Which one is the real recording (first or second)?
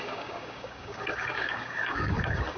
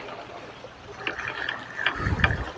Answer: second